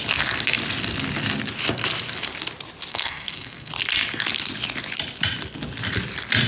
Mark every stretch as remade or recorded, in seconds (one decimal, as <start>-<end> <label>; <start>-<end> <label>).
0.0-2.9 recorded; 2.9-3.7 remade; 3.7-6.5 recorded